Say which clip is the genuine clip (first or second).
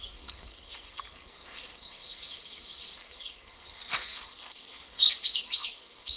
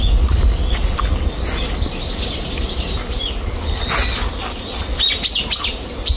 second